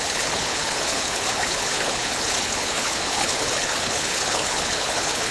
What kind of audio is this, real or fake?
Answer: fake